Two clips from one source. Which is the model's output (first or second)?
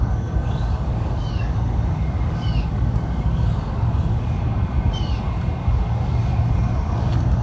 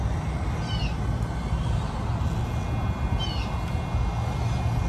first